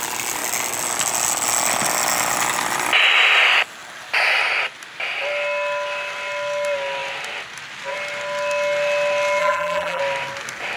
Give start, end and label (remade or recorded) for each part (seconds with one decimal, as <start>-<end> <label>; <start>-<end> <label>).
0.0-9.4 recorded; 9.4-10.0 remade; 10.0-10.8 recorded